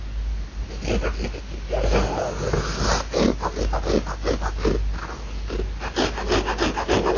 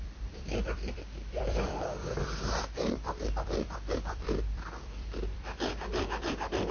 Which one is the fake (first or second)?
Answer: second